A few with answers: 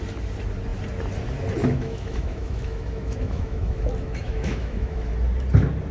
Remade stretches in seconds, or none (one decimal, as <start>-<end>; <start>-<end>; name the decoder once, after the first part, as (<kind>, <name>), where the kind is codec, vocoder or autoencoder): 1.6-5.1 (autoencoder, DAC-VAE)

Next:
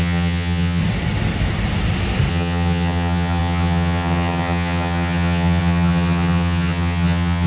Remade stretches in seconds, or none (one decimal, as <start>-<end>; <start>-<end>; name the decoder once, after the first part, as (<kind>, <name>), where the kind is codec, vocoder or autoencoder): 0.0-0.8 (vocoder, HiFi-GAN); 2.3-7.5

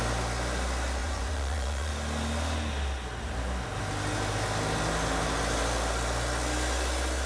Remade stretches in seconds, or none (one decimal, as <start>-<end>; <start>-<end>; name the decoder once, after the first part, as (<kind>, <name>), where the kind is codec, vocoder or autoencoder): 1.0-1.9 (vocoder, Vocos)

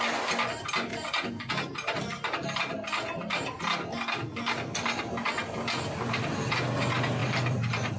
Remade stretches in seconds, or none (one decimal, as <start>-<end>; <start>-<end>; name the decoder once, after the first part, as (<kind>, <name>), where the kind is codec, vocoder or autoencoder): 0.9-1.5 (vocoder, BigVGAN v2); 7.2-8.0